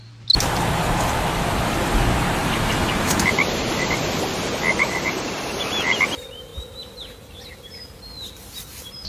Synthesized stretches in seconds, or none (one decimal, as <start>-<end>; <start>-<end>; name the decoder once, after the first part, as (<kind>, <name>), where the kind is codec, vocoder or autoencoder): 2.4-4.1 (vocoder, BigVGAN v2); 4.7-6.1